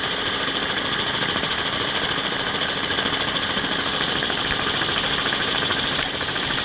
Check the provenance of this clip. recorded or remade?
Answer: recorded